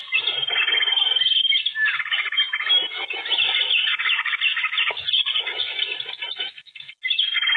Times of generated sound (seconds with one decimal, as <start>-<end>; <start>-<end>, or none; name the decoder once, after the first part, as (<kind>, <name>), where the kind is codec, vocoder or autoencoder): none